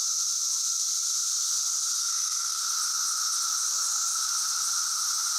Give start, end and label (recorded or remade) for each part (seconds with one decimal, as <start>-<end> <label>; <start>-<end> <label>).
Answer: 0.0-2.0 recorded; 2.0-2.6 remade; 2.6-5.4 recorded